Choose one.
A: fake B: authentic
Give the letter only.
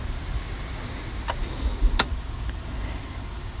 B